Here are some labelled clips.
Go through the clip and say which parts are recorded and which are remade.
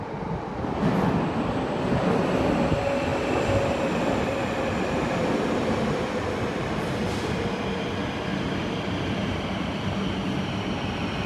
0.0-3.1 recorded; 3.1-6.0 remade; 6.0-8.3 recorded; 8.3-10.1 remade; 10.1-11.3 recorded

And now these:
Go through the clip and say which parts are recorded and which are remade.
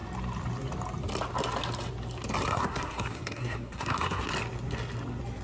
0.0-2.5 recorded; 2.5-4.3 remade; 4.3-5.4 recorded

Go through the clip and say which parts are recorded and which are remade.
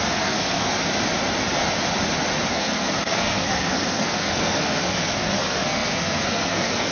0.0-0.7 remade; 0.7-2.5 recorded; 2.5-6.9 remade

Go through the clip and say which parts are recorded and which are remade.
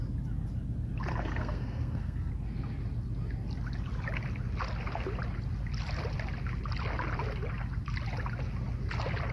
0.0-1.1 recorded; 1.1-2.3 remade; 2.3-9.3 recorded